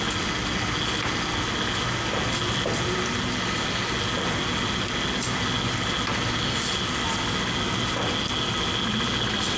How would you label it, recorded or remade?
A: recorded